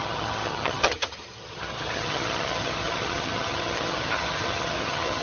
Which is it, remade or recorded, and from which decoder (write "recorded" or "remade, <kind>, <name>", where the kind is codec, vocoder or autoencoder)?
remade, vocoder, HiFi-GAN